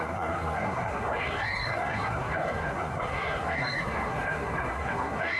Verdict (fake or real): fake